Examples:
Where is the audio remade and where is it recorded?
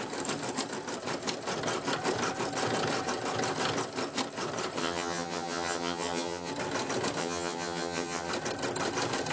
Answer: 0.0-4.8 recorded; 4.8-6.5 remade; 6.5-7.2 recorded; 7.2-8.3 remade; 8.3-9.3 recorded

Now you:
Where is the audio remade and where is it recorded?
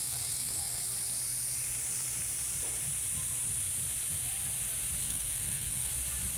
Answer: 0.0-0.8 remade; 0.8-5.0 recorded; 5.0-5.9 remade; 5.9-6.4 recorded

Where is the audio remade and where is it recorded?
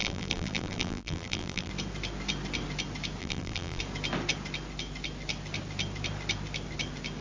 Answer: 0.0-1.7 remade; 1.7-3.2 recorded; 3.2-3.8 remade; 3.8-7.2 recorded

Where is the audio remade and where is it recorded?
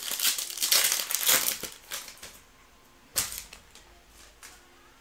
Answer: 0.0-5.0 recorded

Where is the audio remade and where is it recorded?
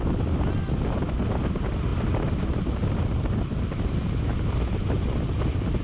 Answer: 0.0-5.8 recorded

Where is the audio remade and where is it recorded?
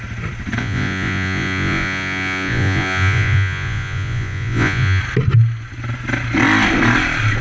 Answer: 0.0-0.6 recorded; 0.6-5.0 remade; 5.0-7.4 recorded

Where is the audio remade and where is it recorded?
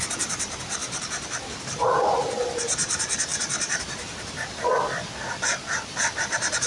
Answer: 0.0-0.8 remade; 0.8-1.6 recorded; 1.6-4.7 remade; 4.7-6.0 recorded; 6.0-6.7 remade